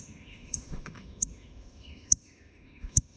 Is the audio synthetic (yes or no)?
yes